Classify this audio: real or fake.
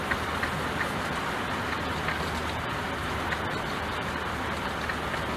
real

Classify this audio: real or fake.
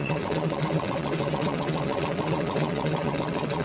fake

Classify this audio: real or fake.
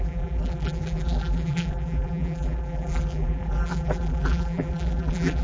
fake